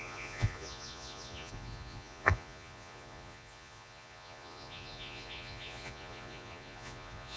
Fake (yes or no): yes